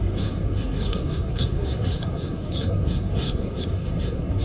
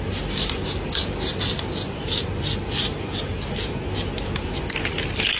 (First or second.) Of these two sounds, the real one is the second